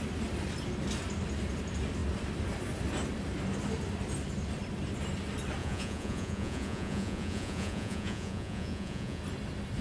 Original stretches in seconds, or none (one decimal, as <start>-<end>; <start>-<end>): 0.0-5.6; 9.2-9.8